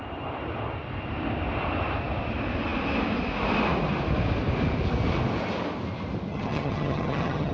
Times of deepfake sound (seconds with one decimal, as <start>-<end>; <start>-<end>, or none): 6.3-7.5